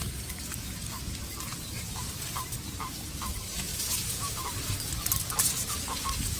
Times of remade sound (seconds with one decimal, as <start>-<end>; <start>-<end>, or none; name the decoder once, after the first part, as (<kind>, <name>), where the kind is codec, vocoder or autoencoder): 1.5-2.9 (vocoder, BigVGAN v2); 3.7-5.2